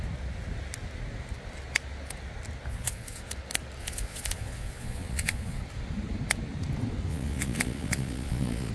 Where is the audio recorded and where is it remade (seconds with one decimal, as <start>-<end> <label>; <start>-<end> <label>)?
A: 0.0-2.7 recorded; 2.7-3.2 remade; 3.2-3.8 recorded; 3.8-5.6 remade; 5.6-7.1 recorded; 7.1-8.7 remade